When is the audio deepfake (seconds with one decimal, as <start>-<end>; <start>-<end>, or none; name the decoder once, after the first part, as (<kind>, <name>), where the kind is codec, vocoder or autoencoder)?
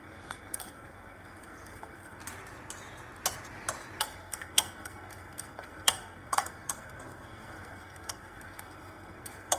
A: 0.0-2.2 (codec, SNAC); 4.0-9.6